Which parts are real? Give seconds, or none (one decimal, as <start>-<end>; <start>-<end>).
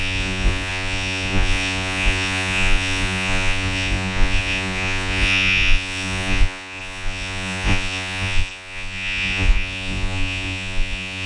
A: none